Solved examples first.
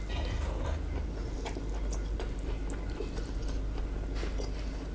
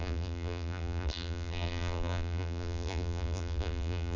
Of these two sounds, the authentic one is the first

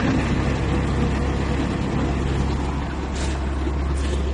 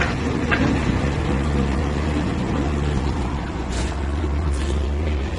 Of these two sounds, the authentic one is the first